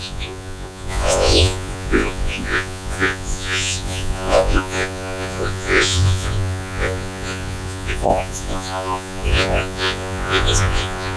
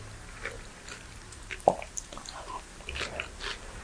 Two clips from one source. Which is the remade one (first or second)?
first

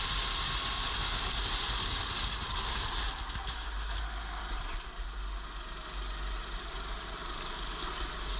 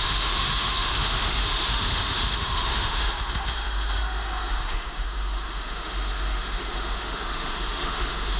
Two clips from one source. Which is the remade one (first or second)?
second